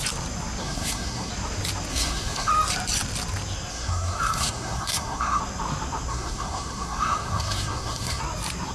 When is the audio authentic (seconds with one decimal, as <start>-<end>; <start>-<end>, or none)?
0.0-0.6; 1.3-1.9; 2.5-3.7; 5.4-6.1; 8.2-8.7